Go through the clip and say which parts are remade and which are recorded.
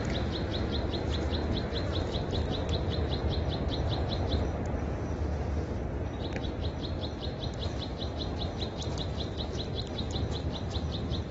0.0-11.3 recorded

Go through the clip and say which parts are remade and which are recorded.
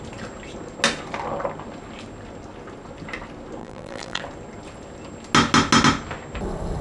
0.0-3.6 recorded; 3.6-4.2 remade; 4.2-6.8 recorded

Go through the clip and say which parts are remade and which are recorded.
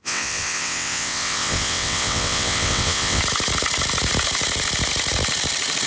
0.0-3.2 remade; 3.2-5.9 recorded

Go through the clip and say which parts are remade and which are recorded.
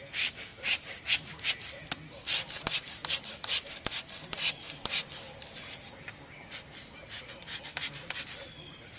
0.0-0.5 recorded; 0.5-1.3 remade; 1.3-9.0 recorded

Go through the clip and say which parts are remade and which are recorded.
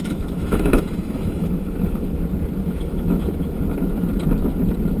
0.0-2.2 remade; 2.2-2.6 recorded; 2.6-3.6 remade; 3.6-5.0 recorded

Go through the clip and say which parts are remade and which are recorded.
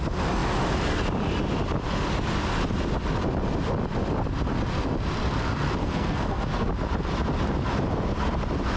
0.0-5.8 recorded; 5.8-6.7 remade; 6.7-8.8 recorded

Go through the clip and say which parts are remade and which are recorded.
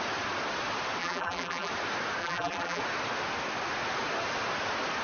0.0-1.0 recorded; 1.0-1.7 remade; 1.7-2.2 recorded; 2.2-2.8 remade; 2.8-5.0 recorded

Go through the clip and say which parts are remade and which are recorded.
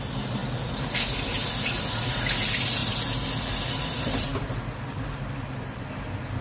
0.0-2.8 remade; 2.8-3.4 recorded; 3.4-6.4 remade